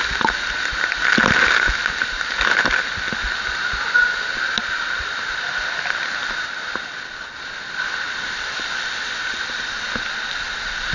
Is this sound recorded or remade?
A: recorded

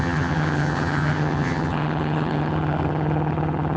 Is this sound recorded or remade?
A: remade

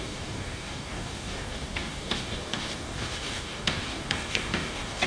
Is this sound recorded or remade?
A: remade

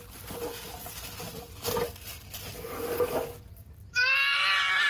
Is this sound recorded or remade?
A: recorded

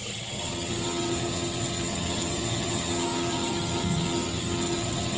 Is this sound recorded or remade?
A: remade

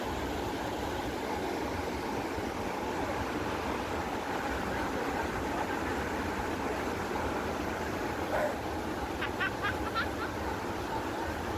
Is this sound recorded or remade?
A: recorded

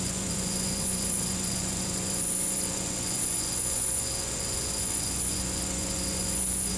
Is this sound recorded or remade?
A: remade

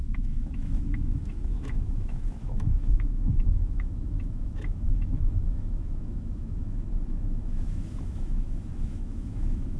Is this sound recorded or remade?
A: remade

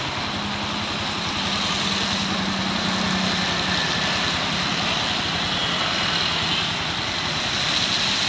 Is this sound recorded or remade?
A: recorded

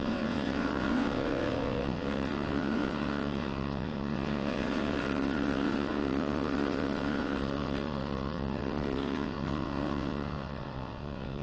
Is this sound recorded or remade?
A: remade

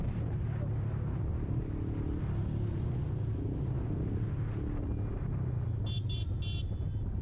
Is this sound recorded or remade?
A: recorded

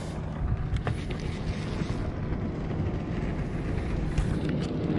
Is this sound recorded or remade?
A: recorded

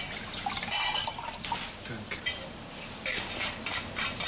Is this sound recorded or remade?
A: remade